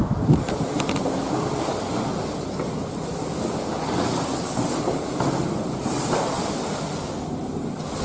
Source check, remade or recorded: recorded